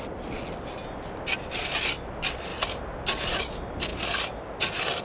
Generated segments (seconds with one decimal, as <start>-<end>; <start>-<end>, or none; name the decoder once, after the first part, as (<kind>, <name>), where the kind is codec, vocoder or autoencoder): 2.5-3.4 (vocoder, BigVGAN v2)